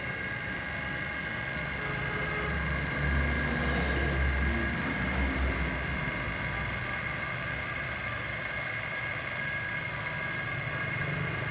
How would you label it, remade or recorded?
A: recorded